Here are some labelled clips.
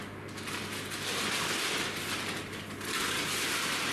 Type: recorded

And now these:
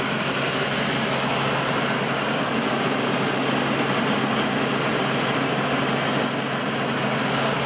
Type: recorded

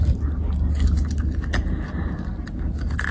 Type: recorded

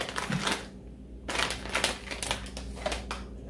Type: recorded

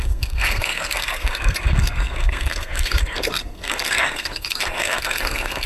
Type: remade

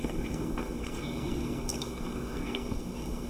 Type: remade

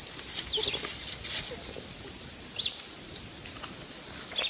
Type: recorded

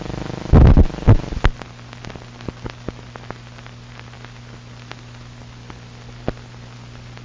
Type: recorded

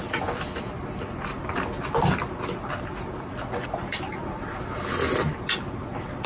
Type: recorded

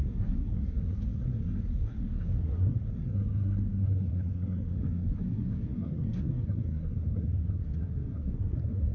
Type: remade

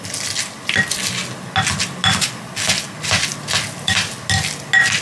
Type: recorded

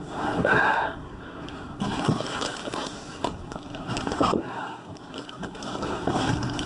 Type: remade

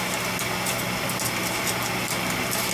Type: recorded